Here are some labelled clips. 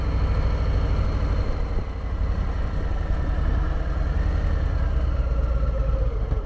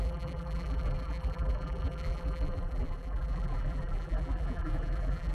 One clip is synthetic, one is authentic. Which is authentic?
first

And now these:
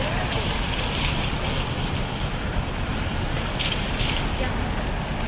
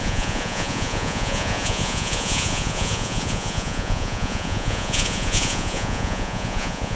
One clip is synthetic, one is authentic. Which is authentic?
first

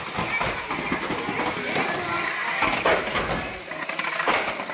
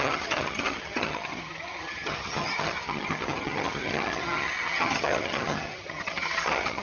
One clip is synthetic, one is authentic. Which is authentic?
first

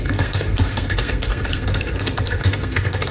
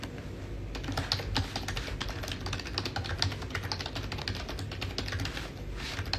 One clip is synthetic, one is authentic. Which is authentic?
second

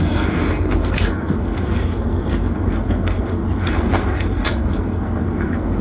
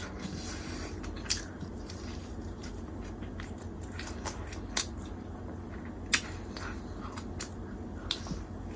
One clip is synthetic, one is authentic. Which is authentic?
second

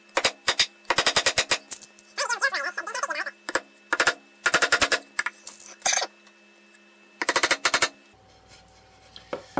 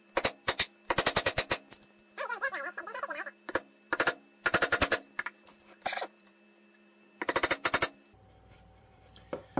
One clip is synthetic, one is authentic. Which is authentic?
first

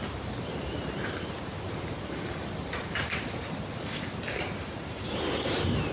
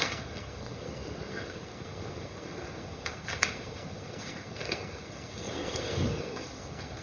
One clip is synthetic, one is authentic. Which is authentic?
first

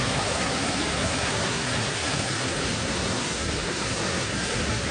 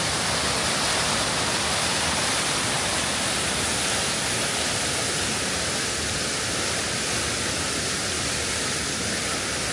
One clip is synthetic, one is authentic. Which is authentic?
second